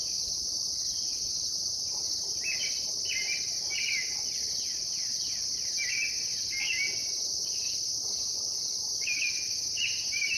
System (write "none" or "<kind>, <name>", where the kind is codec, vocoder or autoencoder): none